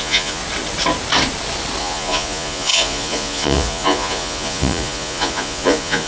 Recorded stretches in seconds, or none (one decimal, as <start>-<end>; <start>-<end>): 0.4-1.8